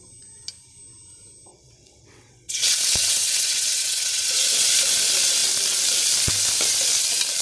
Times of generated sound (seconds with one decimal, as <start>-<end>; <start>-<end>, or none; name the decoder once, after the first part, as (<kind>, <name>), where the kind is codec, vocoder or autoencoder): 1.5-4.4 (vocoder, WaveNeXt)